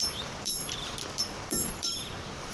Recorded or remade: remade